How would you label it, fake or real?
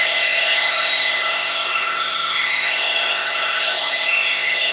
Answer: fake